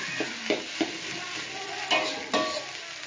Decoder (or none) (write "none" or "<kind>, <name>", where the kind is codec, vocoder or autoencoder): none